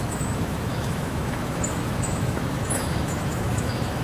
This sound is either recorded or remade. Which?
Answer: remade